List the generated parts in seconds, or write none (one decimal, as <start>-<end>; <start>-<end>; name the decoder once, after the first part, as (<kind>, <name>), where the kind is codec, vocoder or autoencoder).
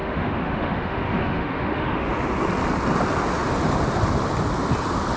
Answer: 0.0-2.1 (autoencoder, DAC-VAE)